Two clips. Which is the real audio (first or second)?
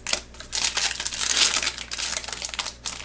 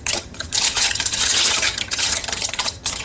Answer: first